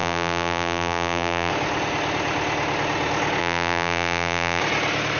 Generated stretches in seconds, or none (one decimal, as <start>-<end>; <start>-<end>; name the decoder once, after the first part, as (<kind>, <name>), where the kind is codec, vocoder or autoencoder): 0.0-1.5 (vocoder, BigVGAN v2); 3.4-4.6